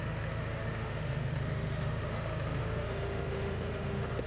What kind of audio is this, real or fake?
fake